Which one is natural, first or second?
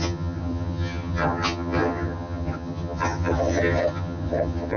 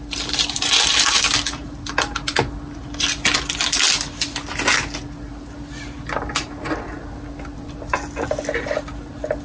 second